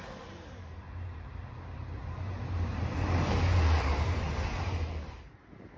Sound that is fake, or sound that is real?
fake